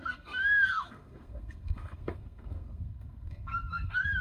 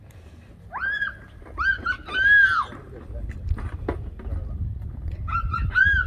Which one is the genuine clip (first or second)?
second